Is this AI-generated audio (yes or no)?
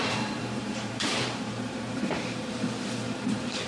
yes